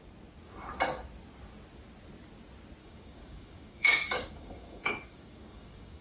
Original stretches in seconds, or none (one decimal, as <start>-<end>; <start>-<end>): 0.0-2.8

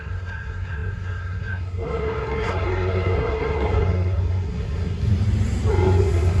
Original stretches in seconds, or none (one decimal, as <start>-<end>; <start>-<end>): 5.1-5.7

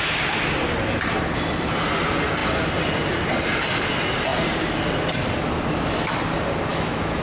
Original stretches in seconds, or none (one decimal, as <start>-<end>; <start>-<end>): 0.0-6.7

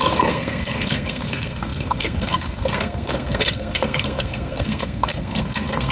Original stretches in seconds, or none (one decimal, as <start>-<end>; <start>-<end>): none

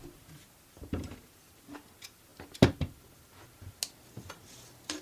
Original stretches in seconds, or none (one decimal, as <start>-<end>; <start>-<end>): 0.0-5.0

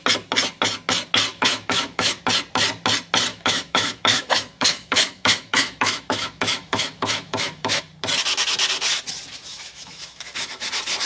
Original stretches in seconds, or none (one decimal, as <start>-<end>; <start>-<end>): 0.0-1.3; 2.2-3.3; 7.8-9.5; 10.7-11.1

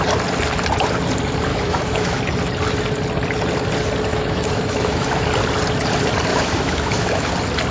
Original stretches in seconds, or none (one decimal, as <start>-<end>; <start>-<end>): 0.0-1.5; 2.2-4.1; 5.3-6.3; 7.3-7.7

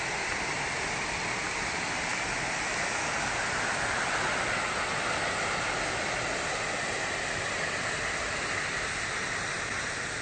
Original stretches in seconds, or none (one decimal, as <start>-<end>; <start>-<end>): 0.0-10.2